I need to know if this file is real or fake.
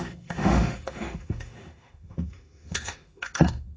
fake